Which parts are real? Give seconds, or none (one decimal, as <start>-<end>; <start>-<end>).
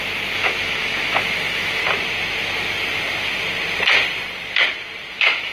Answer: 1.8-5.1